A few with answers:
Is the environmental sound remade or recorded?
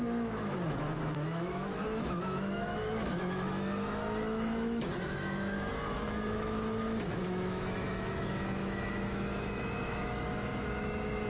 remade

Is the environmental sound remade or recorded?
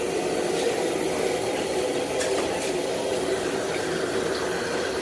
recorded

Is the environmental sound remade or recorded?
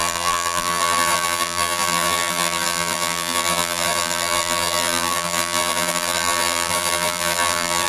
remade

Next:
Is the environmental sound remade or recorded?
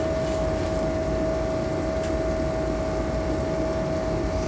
recorded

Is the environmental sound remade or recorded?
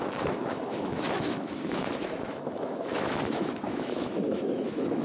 remade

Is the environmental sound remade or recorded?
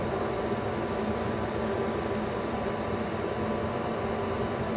recorded